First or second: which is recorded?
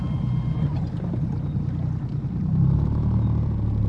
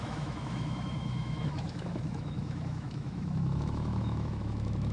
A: first